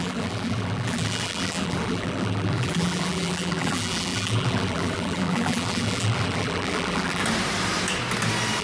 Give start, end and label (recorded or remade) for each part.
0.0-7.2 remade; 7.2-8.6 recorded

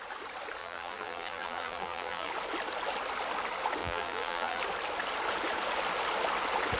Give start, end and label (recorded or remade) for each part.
0.0-0.6 recorded; 0.6-2.3 remade; 2.3-3.8 recorded; 3.8-4.6 remade; 4.6-6.8 recorded

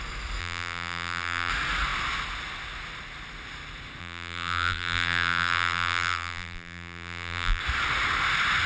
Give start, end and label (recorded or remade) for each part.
0.0-0.4 recorded; 0.4-1.5 remade; 1.5-4.0 recorded; 4.0-7.6 remade; 7.6-8.7 recorded

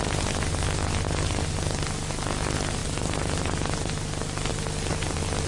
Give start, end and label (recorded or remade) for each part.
0.0-5.5 recorded